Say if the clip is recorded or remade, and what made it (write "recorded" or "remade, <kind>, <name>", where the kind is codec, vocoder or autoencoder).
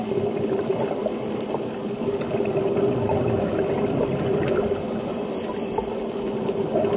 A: recorded